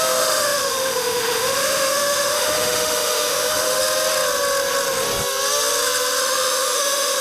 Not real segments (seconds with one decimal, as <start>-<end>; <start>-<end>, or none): 0.0-3.8; 6.2-7.2

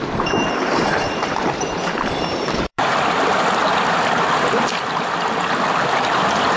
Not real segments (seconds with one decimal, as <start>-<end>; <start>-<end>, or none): 0.0-2.9

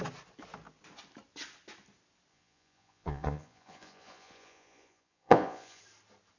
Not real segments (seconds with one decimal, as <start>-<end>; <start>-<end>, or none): 2.3-5.8